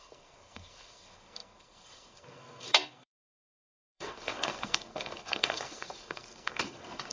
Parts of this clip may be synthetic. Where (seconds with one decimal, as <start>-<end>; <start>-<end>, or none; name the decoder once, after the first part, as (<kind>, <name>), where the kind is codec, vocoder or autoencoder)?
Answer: 0.0-7.1 (codec, SNAC)